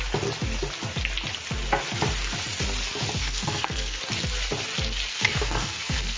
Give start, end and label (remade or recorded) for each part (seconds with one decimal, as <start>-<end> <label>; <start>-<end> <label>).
0.0-3.2 recorded; 3.2-4.0 remade; 4.0-5.1 recorded; 5.1-6.2 remade